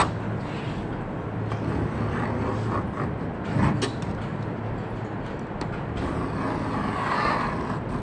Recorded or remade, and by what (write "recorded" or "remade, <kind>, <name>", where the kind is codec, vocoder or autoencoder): recorded